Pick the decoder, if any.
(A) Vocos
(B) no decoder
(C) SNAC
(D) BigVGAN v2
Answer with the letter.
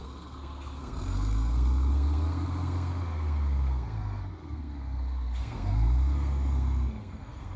C